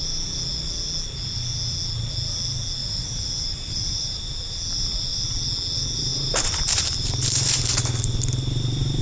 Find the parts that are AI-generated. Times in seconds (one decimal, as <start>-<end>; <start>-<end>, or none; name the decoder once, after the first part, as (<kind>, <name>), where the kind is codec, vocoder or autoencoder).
2.8-4.2 (vocoder, BigVGAN v2); 6.1-9.0